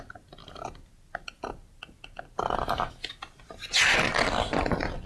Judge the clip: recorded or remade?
recorded